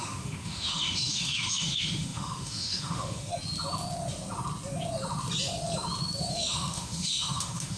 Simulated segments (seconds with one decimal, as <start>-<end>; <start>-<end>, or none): 0.0-3.3; 6.3-7.8